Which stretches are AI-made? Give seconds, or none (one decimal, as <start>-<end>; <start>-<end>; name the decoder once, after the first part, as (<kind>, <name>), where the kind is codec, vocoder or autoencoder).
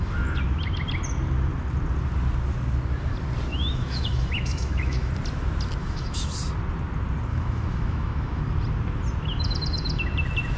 3.5-5.1 (autoencoder, DAC-VAE); 5.8-6.3; 7.3-8.4